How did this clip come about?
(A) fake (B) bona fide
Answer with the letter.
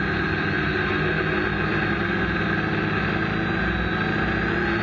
B